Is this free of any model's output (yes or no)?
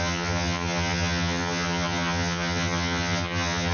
no